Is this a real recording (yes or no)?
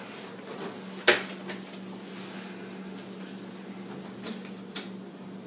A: yes